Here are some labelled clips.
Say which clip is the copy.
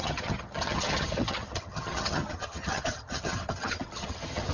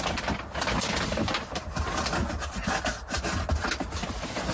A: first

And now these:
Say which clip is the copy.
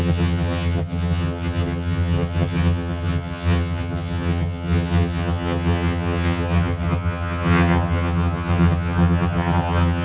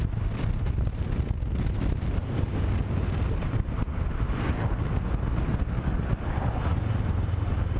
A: first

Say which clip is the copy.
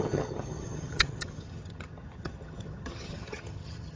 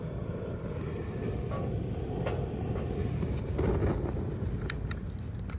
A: first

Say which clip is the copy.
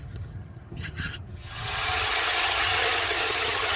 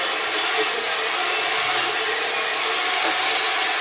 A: first